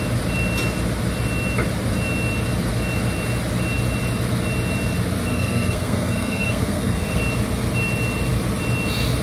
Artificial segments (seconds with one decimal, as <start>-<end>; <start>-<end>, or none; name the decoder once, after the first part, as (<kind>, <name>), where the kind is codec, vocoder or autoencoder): 5.3-7.2 (codec, SNAC)